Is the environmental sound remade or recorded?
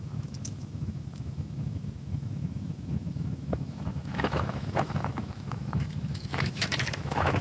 remade